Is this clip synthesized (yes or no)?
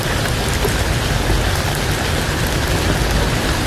no